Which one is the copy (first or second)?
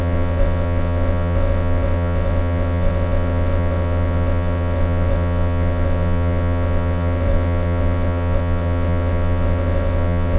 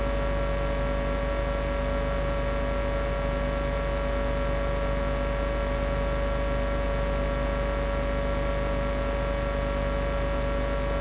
first